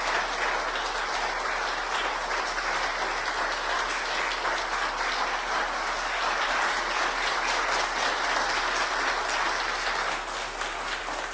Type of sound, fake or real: real